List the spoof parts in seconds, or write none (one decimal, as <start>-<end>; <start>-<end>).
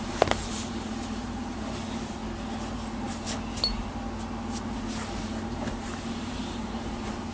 0.0-2.2; 5.2-7.3